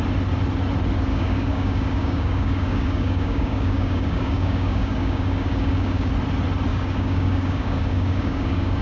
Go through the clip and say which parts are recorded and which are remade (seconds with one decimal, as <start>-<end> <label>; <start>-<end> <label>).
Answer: 0.0-1.1 recorded; 1.1-6.1 remade; 6.1-6.7 recorded; 6.7-8.8 remade